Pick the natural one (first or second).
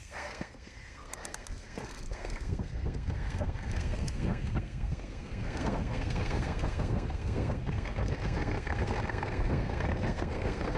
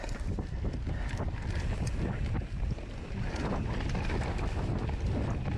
second